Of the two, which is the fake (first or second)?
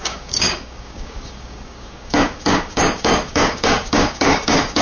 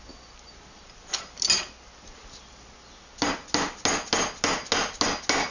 first